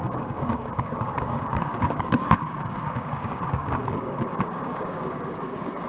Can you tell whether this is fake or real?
fake